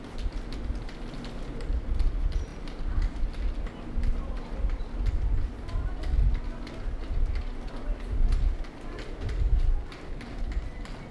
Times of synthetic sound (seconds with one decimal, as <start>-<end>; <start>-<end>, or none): none